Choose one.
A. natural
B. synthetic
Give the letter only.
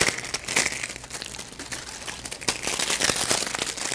A